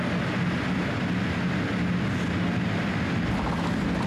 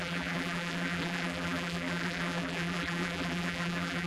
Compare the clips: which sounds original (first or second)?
first